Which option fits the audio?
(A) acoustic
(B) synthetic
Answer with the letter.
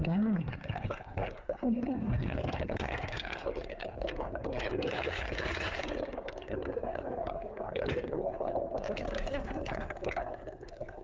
B